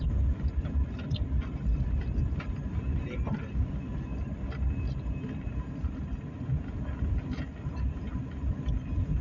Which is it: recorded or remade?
recorded